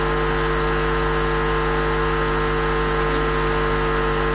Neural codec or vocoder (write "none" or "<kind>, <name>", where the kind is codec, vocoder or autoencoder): none